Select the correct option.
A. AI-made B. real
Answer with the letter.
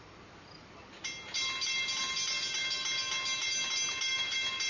B